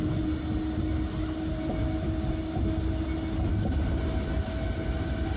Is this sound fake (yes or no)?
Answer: no